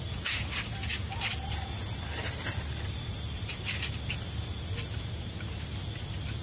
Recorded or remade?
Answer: recorded